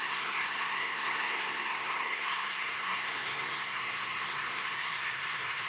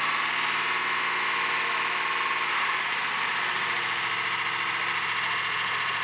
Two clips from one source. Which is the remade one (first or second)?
first